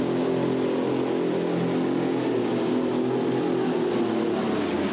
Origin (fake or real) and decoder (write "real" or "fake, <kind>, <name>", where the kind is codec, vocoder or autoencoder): real